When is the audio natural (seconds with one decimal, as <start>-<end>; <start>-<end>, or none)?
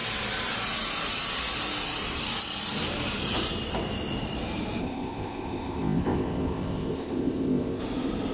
0.0-4.8; 7.8-8.3